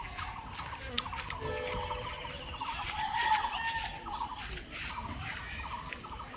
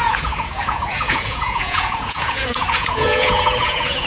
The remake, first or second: second